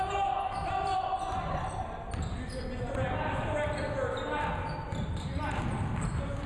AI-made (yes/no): no